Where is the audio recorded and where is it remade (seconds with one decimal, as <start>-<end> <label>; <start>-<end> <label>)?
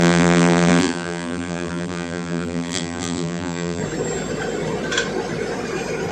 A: 0.0-3.8 remade; 3.8-6.1 recorded